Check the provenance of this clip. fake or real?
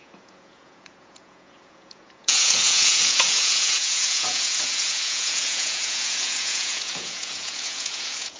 fake